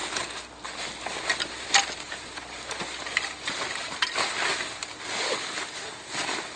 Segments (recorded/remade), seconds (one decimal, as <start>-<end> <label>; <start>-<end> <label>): 0.0-6.6 recorded